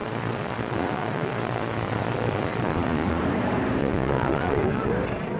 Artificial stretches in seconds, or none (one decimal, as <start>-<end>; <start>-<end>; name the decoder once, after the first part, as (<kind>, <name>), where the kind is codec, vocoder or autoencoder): 0.0-3.2 (vocoder, Vocos); 3.8-4.9